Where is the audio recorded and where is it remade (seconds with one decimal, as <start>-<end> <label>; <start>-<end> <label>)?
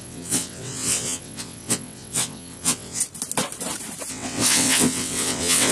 0.0-3.0 remade; 3.0-4.1 recorded; 4.1-5.7 remade